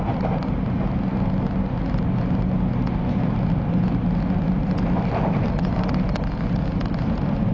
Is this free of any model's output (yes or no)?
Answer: yes